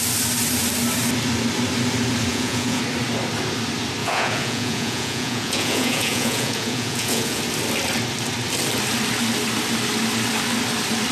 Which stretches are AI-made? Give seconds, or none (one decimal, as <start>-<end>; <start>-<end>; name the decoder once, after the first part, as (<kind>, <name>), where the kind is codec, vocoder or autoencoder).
2.3-2.8 (vocoder, Vocos); 4.0-7.4